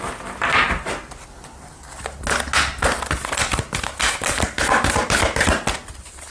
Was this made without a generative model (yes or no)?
yes